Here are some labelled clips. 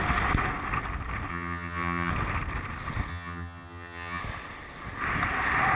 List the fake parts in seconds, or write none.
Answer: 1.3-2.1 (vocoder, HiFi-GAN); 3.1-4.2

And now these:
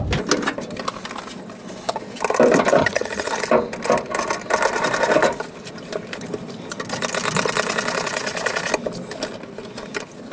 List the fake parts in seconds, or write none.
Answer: 2.8-3.3 (vocoder, HiFi-GAN)

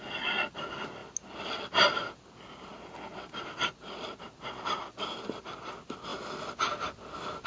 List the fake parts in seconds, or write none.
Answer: none